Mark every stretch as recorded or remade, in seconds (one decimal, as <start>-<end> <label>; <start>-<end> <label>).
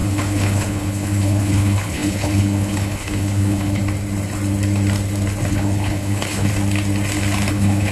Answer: 0.0-3.8 remade; 3.8-5.5 recorded; 5.5-6.5 remade; 6.5-7.5 recorded; 7.5-7.9 remade